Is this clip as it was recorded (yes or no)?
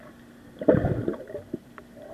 yes